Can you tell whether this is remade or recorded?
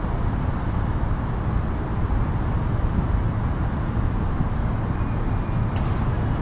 recorded